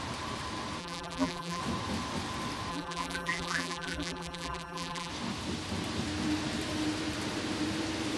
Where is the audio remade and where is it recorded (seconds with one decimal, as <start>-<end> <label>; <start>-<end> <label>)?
0.0-0.8 recorded; 0.8-1.6 remade; 1.6-2.7 recorded; 2.7-5.1 remade; 5.1-8.2 recorded